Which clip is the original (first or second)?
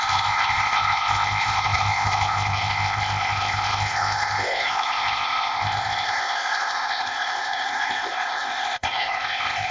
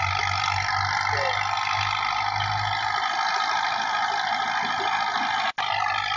second